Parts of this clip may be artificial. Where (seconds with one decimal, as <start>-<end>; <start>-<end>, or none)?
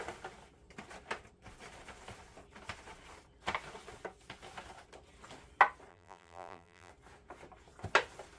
5.9-6.9